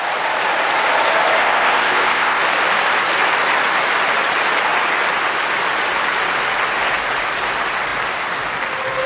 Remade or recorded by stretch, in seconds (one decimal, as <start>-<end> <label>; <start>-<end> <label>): 0.0-1.4 recorded; 1.4-2.4 remade; 2.4-9.1 recorded